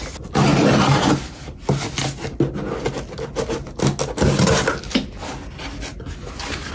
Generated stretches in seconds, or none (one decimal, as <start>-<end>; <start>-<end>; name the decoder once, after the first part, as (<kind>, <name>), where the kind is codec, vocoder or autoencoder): none